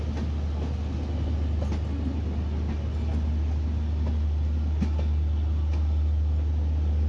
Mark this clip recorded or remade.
recorded